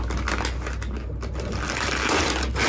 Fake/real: real